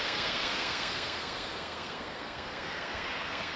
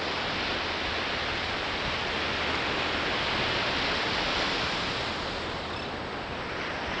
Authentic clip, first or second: second